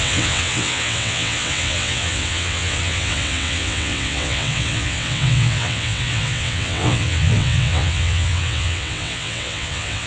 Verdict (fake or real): fake